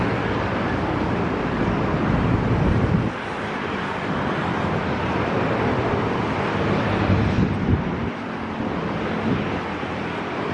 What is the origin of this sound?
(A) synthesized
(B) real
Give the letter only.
A